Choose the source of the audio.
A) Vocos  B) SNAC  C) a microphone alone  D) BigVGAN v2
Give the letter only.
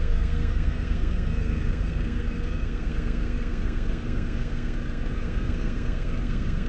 B